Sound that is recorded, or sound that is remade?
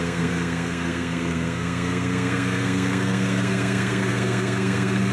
remade